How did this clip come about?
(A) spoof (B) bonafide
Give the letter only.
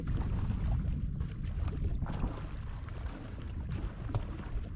B